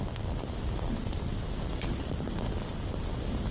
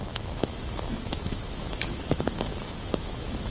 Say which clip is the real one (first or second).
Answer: first